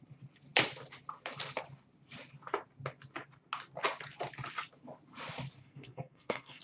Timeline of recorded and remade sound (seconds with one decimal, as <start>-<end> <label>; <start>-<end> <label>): 0.0-5.6 recorded; 5.6-6.6 remade